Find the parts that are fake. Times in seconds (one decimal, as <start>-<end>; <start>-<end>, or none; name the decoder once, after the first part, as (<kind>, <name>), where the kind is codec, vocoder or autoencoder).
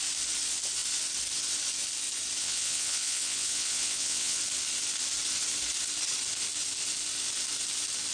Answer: 2.4-4.4 (vocoder, WaveNeXt)